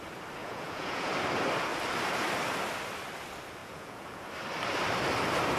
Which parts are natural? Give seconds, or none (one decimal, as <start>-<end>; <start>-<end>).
0.0-0.4; 1.1-3.6; 4.3-5.6